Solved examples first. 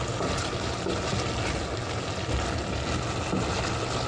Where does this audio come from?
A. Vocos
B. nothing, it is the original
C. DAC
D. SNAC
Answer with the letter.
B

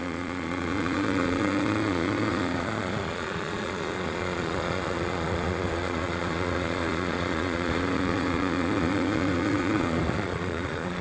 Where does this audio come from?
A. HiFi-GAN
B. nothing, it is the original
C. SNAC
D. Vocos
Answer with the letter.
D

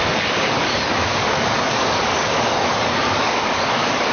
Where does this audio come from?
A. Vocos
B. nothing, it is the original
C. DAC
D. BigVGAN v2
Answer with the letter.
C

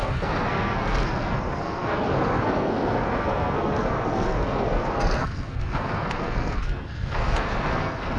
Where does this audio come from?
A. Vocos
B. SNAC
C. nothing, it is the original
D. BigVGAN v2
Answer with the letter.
B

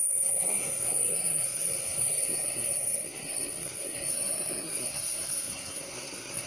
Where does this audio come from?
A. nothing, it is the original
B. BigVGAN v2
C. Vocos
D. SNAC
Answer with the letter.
D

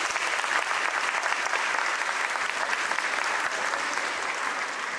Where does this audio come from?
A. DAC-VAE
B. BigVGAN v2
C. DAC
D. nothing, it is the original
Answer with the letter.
D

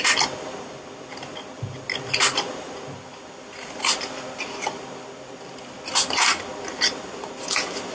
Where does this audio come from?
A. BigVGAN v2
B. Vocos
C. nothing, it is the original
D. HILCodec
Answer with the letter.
C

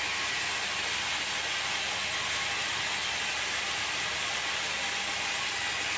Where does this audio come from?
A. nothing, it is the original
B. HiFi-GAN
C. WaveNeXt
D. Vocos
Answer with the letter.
A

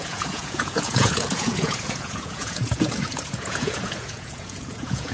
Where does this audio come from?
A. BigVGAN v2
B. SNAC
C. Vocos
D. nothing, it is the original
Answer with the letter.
C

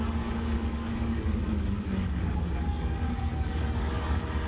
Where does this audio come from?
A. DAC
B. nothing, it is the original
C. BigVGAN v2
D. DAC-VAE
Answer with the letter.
A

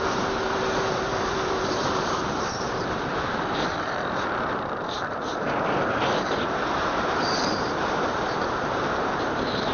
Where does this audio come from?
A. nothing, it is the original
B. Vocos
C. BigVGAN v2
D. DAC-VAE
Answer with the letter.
C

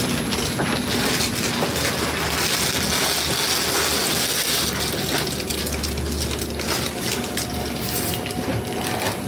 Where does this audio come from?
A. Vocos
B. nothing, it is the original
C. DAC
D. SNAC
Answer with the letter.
B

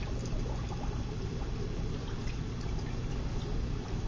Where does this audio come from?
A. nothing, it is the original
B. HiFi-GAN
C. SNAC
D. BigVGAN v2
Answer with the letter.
A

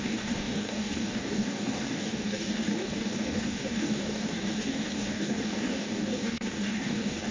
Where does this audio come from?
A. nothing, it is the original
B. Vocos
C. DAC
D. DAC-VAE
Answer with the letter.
C